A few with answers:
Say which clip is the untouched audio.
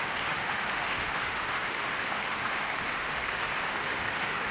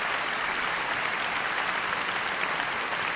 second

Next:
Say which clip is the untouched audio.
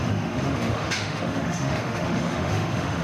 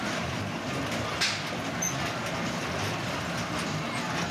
second